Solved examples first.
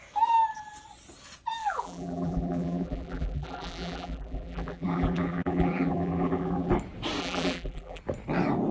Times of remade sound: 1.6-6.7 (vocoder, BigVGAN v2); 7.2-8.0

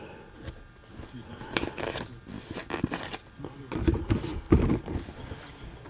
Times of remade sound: 0.9-1.4 (vocoder, BigVGAN v2); 4.3-5.2